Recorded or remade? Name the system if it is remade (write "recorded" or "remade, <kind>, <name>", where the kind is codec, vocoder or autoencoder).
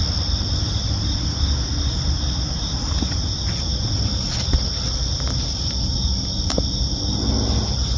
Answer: recorded